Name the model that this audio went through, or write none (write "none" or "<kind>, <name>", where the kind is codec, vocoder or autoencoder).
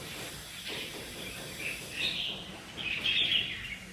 vocoder, BigVGAN v2